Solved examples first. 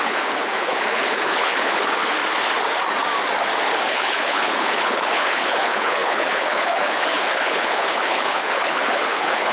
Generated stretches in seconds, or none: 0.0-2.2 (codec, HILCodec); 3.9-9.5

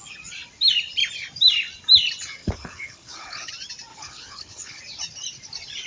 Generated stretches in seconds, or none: 2.4-3.5 (codec, HILCodec); 3.9-4.8

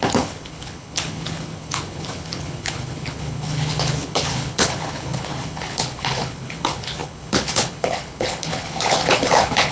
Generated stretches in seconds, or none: 0.0-9.7 (codec, HILCodec)